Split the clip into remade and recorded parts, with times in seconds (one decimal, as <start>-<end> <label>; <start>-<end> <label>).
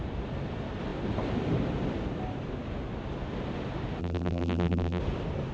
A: 0.0-4.0 recorded; 4.0-5.0 remade; 5.0-5.5 recorded